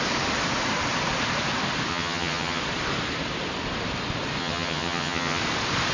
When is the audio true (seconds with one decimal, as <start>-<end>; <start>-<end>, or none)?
0.0-1.9; 2.6-4.4; 5.4-5.9